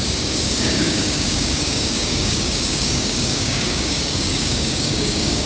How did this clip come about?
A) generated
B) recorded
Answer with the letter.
A